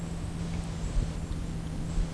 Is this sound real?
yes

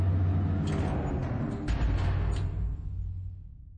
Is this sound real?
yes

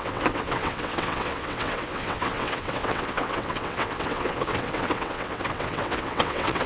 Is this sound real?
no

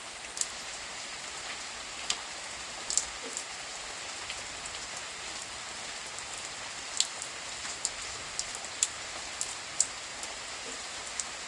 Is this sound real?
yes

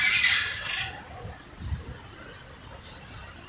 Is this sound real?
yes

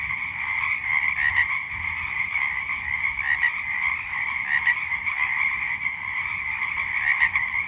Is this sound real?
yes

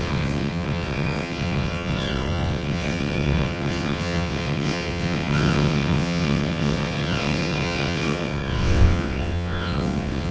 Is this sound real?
no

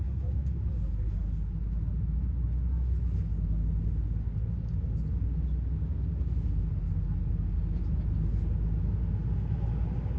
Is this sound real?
yes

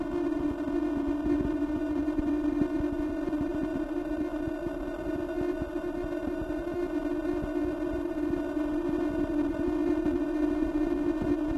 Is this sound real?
yes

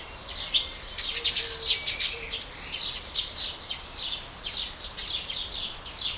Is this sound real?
yes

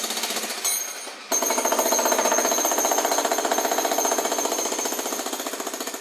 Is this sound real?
yes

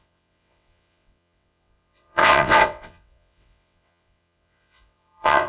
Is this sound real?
no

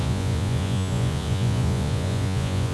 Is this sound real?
no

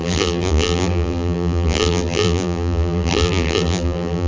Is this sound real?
no